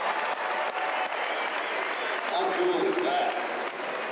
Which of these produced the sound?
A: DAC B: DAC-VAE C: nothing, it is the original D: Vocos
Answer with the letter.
C